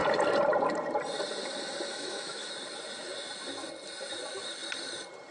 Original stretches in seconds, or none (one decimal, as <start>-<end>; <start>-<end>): 0.0-1.9; 2.5-5.3